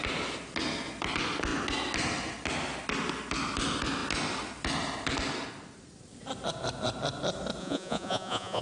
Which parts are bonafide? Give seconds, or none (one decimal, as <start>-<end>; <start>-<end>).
0.0-7.6